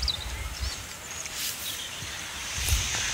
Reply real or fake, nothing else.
fake